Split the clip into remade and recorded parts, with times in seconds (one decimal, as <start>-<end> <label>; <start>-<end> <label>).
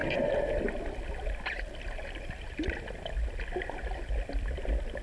0.0-5.0 recorded